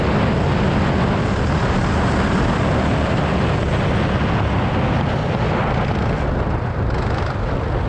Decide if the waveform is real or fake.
real